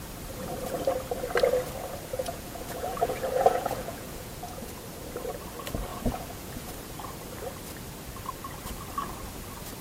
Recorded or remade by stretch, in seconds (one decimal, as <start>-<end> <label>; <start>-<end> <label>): 0.0-2.1 recorded; 2.1-4.7 remade; 4.7-5.9 recorded; 5.9-6.7 remade; 6.7-9.8 recorded